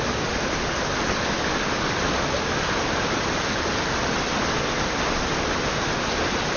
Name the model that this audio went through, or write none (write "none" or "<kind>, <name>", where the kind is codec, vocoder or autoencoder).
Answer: none